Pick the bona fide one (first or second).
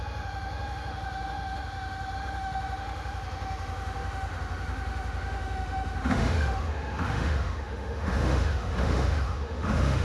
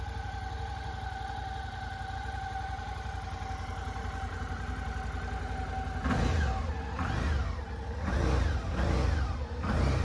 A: second